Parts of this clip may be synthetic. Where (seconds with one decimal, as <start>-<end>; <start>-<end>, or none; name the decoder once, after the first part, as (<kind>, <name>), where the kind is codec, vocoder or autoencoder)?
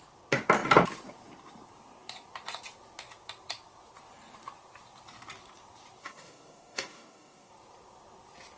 6.0-7.5 (codec, DAC)